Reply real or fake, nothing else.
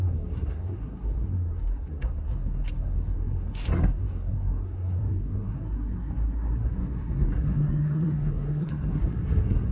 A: fake